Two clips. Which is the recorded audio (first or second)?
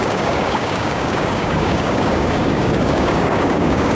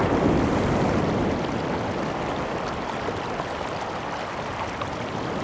second